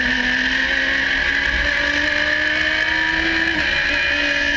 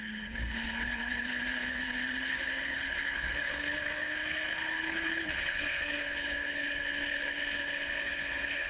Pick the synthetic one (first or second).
second